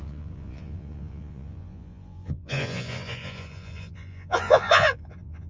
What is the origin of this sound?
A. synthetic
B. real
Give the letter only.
A